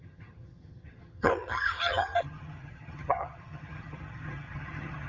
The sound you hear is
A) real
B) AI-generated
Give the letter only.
B